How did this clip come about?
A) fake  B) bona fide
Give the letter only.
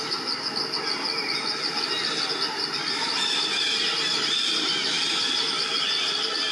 B